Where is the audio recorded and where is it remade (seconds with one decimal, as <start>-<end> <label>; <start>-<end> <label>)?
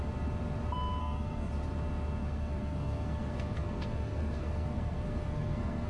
0.0-1.0 recorded; 1.0-1.5 remade; 1.5-2.2 recorded; 2.2-5.9 remade